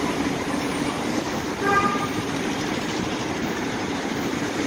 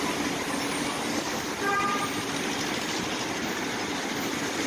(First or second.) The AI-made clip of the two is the first